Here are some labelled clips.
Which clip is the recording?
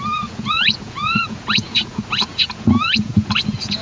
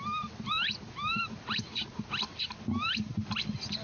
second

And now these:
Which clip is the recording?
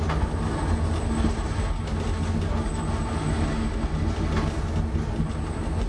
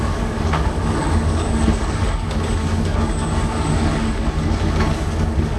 first